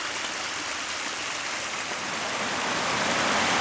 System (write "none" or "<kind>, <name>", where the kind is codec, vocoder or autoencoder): none